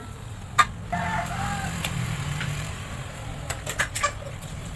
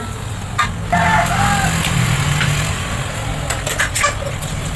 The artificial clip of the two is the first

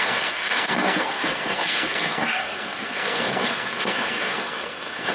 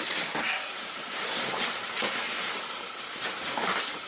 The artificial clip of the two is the first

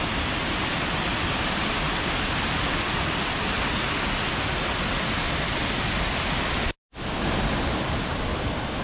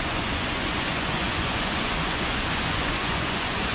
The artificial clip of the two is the second